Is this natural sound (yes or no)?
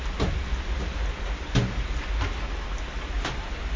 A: yes